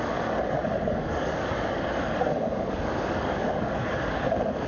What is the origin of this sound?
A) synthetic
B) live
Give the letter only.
A